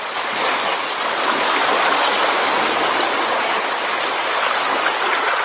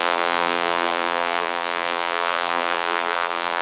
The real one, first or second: first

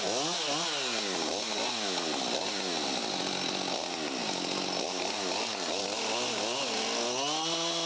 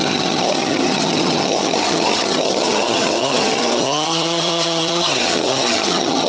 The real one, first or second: first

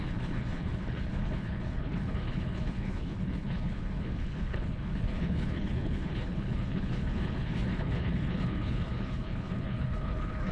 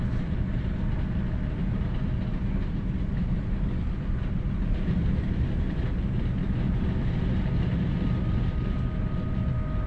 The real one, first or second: second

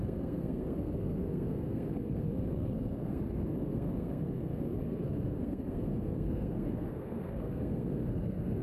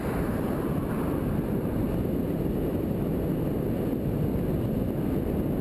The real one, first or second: second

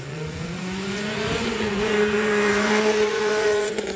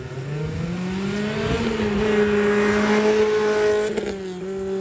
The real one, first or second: second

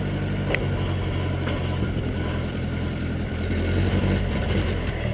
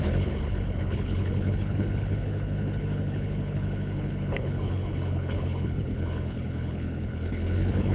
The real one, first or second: first